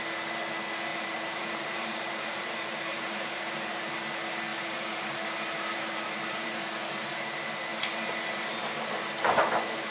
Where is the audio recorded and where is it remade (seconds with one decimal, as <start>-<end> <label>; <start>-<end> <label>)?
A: 0.0-0.9 recorded; 0.9-3.9 remade; 3.9-4.5 recorded; 4.5-7.3 remade; 7.3-9.9 recorded